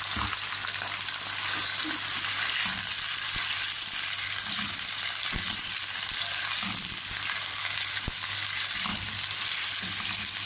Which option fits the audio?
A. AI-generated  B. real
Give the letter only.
B